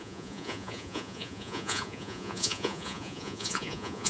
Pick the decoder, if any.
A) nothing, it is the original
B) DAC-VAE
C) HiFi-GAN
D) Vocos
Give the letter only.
D